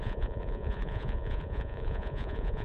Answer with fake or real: fake